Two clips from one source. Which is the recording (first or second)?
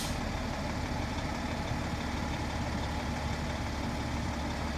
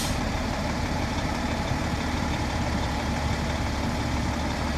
first